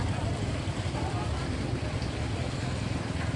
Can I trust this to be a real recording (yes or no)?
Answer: yes